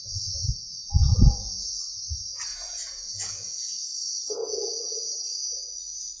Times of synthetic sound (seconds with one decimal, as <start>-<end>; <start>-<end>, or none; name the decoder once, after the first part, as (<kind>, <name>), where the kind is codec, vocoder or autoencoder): 0.8-1.8 (vocoder, Vocos); 2.5-3.6; 4.4-5.1